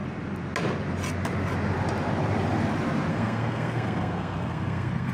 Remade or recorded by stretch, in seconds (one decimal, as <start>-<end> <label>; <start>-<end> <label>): 0.0-3.1 recorded; 3.1-5.1 remade